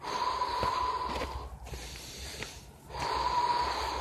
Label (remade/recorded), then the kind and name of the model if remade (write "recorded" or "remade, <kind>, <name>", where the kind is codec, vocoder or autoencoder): recorded